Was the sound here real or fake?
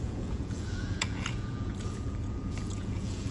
fake